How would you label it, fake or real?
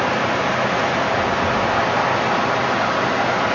real